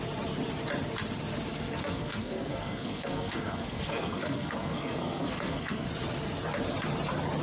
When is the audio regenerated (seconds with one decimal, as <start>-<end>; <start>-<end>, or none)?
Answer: 1.8-5.9